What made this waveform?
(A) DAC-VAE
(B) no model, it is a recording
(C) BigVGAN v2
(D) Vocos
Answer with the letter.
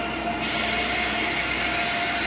B